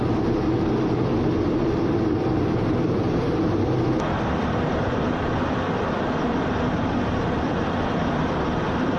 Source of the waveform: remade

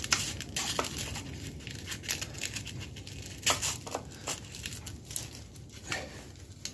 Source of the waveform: recorded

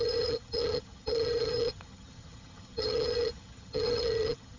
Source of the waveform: remade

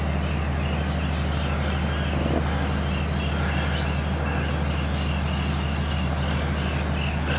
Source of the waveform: recorded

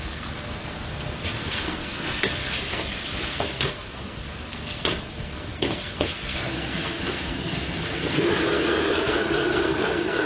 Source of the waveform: remade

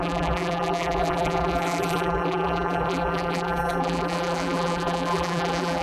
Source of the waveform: remade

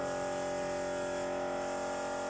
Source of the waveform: recorded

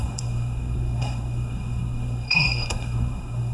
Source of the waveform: remade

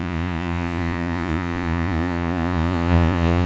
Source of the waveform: remade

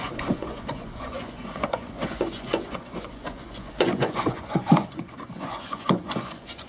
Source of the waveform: remade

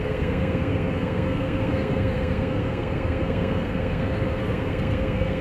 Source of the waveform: remade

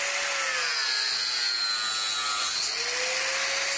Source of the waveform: recorded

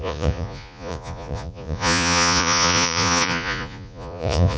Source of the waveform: remade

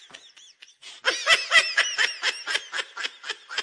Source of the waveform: recorded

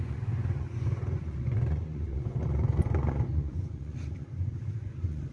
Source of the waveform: remade